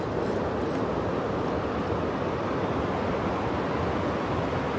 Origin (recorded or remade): recorded